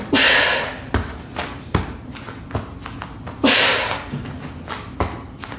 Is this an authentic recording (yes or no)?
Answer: yes